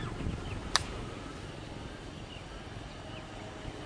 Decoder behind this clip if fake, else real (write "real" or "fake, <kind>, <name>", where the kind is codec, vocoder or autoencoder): real